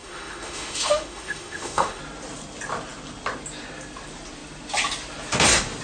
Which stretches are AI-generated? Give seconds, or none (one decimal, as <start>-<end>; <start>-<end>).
0.0-2.0